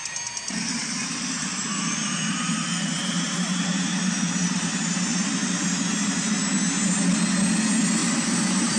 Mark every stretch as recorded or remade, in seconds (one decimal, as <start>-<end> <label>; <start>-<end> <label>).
0.0-0.8 recorded; 0.8-5.7 remade; 5.7-8.0 recorded; 8.0-8.8 remade